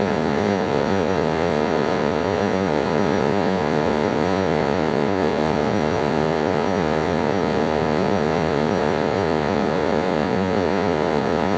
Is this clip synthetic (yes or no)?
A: yes